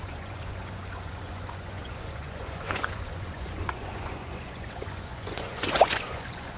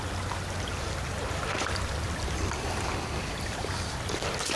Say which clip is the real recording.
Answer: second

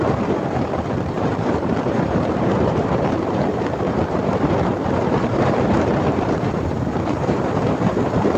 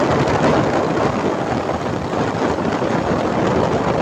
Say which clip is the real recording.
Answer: second